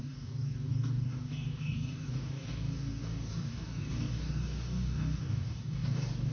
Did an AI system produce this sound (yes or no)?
yes